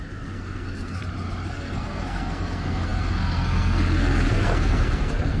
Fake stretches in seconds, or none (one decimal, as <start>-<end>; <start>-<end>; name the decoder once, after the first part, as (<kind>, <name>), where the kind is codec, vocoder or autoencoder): 0.0-1.0 (codec, SNAC); 1.5-5.4